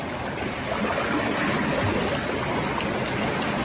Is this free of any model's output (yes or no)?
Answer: yes